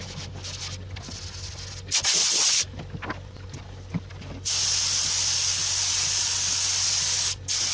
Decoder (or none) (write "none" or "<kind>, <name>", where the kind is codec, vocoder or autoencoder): none